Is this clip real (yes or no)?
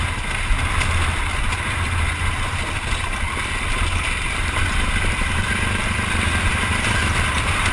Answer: yes